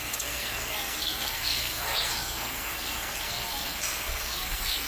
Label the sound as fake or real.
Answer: fake